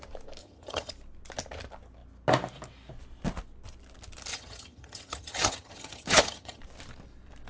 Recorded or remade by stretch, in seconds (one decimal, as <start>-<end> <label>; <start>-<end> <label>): 0.0-0.4 recorded; 0.4-0.9 remade; 0.9-4.3 recorded; 4.3-6.6 remade; 6.6-7.5 recorded